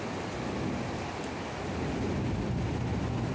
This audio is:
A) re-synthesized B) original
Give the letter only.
B